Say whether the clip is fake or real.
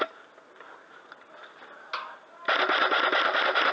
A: real